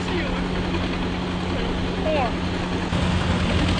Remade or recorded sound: recorded